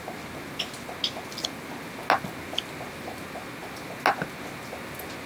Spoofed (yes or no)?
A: no